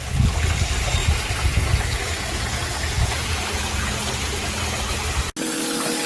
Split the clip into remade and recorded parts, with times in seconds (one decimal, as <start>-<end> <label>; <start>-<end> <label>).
0.0-1.0 recorded; 1.0-4.6 remade; 4.6-6.1 recorded